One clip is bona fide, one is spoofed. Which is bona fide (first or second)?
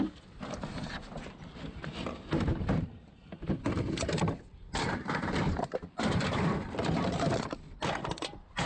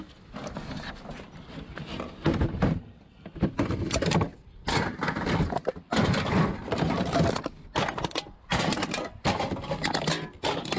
second